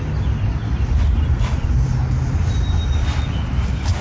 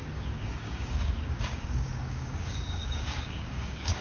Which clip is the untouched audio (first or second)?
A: first